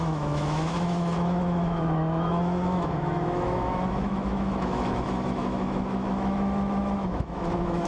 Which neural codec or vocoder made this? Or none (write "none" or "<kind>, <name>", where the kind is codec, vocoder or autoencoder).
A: autoencoder, DAC-VAE